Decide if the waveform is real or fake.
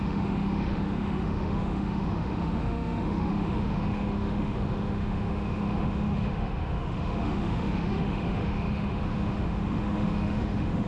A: fake